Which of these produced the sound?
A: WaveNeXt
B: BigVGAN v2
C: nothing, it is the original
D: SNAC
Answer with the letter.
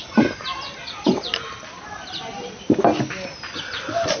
C